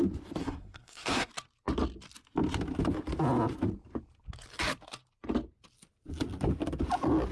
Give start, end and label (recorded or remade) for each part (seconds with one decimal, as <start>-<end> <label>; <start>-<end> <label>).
0.0-0.4 recorded; 0.4-1.3 remade; 1.3-7.3 recorded